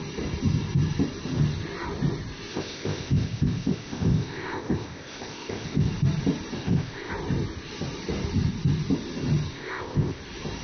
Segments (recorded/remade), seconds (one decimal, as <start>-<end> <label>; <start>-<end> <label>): 0.0-2.5 recorded; 2.5-5.9 remade; 5.9-6.6 recorded; 6.6-7.1 remade; 7.1-9.5 recorded; 9.5-10.2 remade; 10.2-10.6 recorded